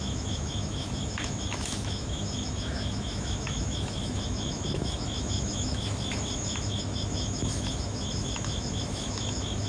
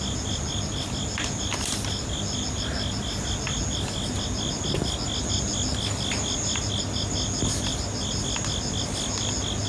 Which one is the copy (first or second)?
first